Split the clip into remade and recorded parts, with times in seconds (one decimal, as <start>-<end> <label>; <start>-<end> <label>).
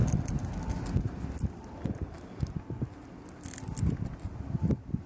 0.0-5.1 recorded